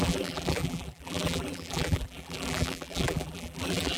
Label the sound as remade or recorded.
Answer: remade